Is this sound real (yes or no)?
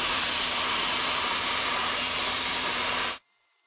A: no